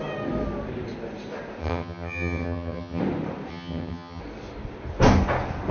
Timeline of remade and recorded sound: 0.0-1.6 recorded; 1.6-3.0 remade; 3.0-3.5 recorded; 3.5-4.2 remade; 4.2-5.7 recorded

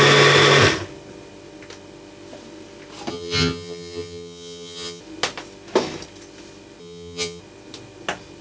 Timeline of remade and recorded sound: 0.0-3.1 recorded; 3.1-5.0 remade; 5.0-6.8 recorded; 6.8-7.4 remade; 7.4-8.4 recorded

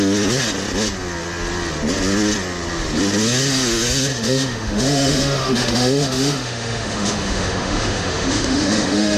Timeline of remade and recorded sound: 0.0-4.1 recorded; 4.1-9.2 remade

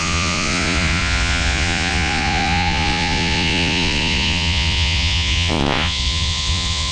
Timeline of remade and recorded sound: 0.0-6.9 remade